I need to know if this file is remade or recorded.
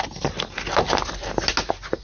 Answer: recorded